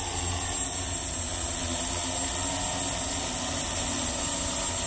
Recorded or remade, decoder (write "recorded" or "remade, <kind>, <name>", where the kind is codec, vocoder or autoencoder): recorded